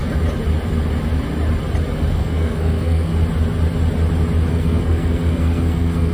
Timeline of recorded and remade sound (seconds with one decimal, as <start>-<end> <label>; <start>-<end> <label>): 0.0-2.1 recorded; 2.1-3.1 remade; 3.1-4.5 recorded; 4.5-6.1 remade